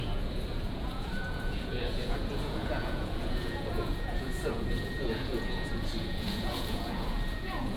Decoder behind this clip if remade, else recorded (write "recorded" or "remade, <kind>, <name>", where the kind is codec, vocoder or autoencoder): remade, vocoder, Vocos